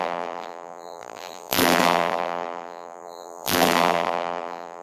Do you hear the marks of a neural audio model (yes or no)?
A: yes